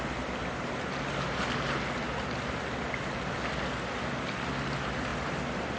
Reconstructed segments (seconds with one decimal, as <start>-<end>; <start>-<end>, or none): none